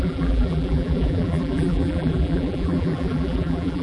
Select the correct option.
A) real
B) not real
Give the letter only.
B